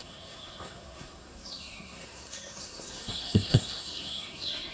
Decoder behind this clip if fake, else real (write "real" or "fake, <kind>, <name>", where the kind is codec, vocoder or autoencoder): fake, codec, SNAC